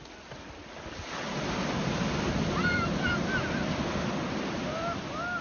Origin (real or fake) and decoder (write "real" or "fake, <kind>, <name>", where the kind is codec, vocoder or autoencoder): real